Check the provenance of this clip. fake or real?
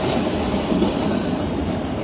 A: real